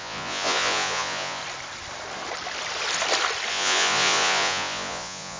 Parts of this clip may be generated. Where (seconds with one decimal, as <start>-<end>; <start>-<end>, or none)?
0.0-1.4; 3.5-5.4